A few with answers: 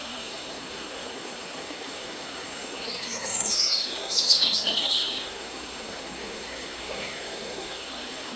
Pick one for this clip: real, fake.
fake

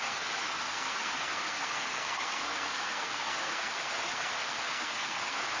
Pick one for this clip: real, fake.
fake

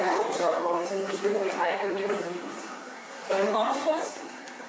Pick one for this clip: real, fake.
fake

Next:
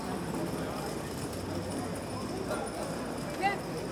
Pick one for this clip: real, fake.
real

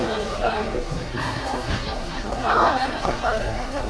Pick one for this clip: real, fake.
fake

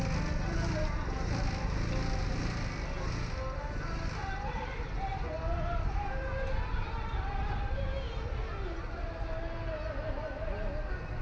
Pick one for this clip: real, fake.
real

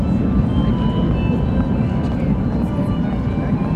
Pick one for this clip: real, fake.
real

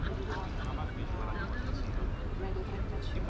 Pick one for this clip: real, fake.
real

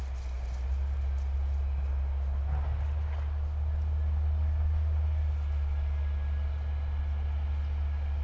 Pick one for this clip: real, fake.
real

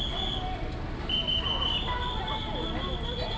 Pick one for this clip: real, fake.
real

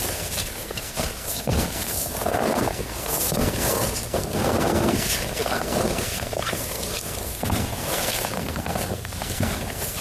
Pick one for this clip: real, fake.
fake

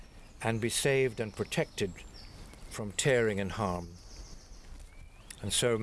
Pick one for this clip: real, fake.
real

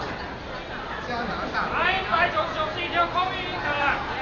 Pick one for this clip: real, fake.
real